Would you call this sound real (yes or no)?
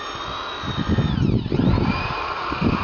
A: yes